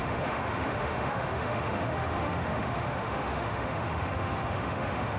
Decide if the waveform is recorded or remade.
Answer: remade